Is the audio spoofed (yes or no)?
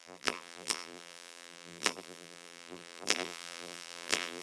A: yes